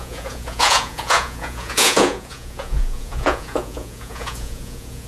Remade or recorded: remade